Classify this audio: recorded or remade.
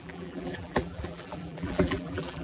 remade